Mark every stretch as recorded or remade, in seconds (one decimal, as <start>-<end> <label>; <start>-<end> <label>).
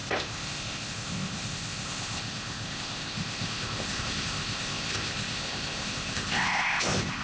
0.0-7.2 remade